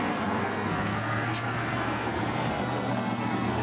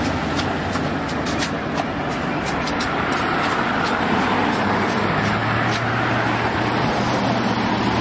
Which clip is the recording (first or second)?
second